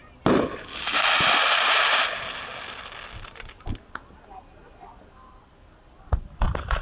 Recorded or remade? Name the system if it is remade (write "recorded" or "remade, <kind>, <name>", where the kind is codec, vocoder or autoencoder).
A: recorded